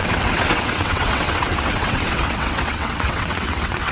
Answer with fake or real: fake